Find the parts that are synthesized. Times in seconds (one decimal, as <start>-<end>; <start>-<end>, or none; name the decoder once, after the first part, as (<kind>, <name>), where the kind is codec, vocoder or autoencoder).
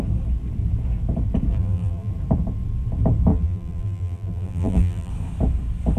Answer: 1.5-2.1 (vocoder, BigVGAN v2); 3.3-5.1